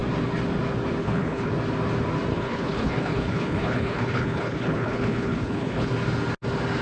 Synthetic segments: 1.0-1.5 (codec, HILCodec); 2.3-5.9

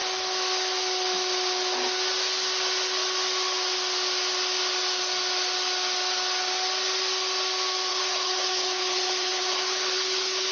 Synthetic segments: 7.9-10.5 (codec, HILCodec)